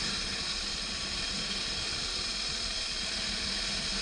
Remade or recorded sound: recorded